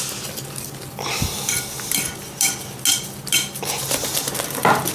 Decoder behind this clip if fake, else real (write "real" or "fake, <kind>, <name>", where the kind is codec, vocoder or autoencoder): real